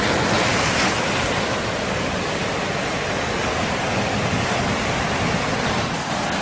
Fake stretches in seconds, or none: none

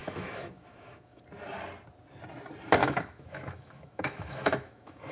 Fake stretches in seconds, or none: 0.0-1.2 (autoencoder, DAC-VAE); 2.8-5.1

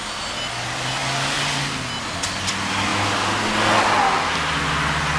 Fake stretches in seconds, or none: none

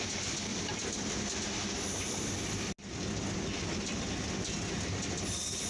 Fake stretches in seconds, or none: none

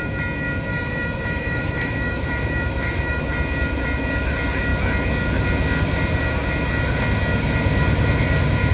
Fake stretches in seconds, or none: 0.7-3.2 (autoencoder, DAC-VAE)

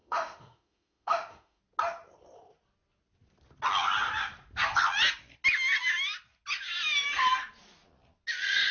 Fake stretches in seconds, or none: 0.0-1.6 (autoencoder, DAC-VAE)

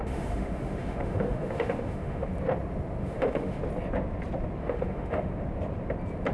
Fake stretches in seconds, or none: 0.0-2.3 (autoencoder, DAC-VAE); 3.0-3.6; 4.6-5.3